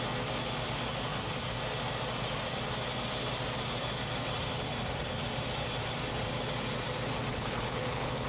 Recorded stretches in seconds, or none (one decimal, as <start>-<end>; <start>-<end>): 0.0-7.3